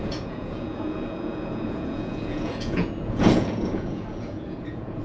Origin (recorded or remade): remade